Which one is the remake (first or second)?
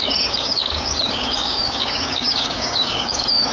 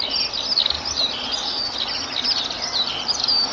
first